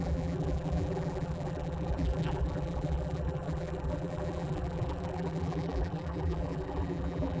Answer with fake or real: fake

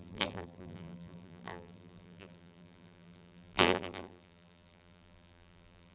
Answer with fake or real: fake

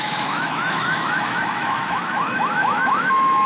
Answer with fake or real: fake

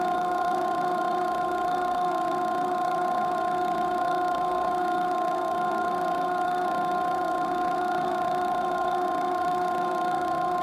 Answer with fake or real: fake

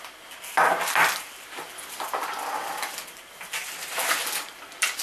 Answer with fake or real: real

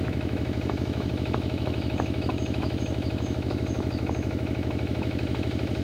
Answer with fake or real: fake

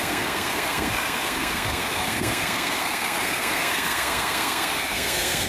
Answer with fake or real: fake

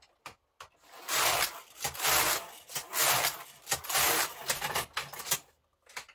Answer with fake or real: real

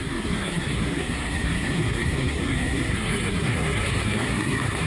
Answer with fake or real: fake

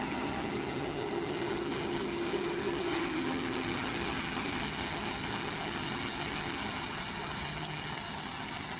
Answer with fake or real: fake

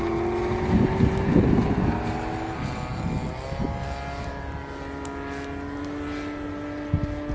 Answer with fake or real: real